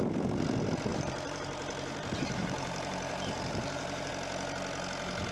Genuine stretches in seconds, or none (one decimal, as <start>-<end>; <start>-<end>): 0.0-0.9; 4.1-5.3